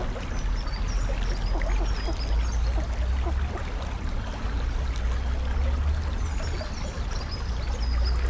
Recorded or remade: recorded